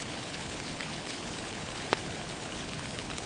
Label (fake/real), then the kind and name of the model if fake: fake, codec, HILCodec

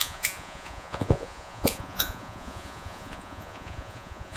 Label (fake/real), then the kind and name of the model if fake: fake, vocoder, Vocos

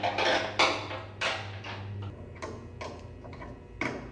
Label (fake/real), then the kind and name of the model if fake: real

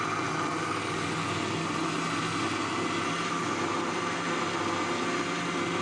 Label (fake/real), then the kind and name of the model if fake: real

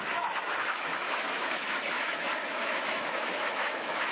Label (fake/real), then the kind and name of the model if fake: fake, autoencoder, DAC-VAE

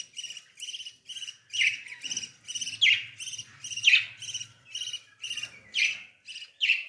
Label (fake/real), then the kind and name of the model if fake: real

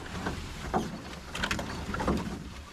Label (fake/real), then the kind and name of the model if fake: fake, vocoder, BigVGAN v2